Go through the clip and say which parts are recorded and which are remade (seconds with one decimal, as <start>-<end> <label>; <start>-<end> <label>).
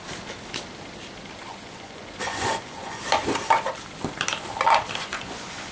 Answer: 0.0-1.5 recorded; 1.5-3.0 remade; 3.0-5.0 recorded; 5.0-5.7 remade